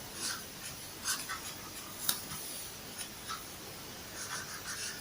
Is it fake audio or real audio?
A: real